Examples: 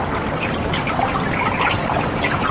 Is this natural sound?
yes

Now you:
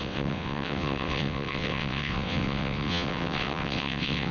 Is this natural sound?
no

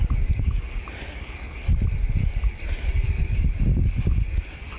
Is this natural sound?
yes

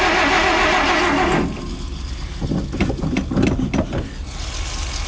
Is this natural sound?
yes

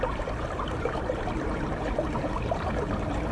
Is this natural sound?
no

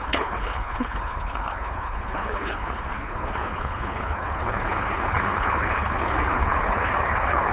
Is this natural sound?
no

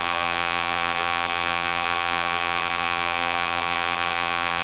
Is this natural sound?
no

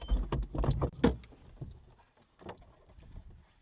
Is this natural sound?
yes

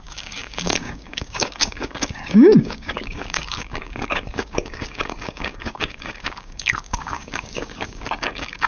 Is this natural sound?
no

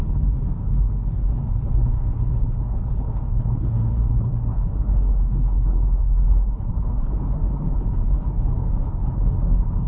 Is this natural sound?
no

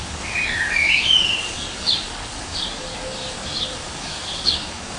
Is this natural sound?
no